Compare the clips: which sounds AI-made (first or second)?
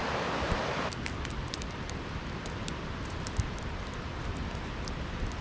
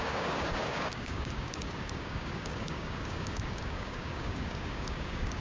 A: second